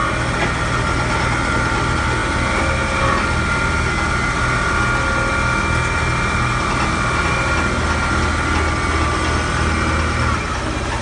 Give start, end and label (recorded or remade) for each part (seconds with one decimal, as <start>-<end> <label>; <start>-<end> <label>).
0.0-11.0 recorded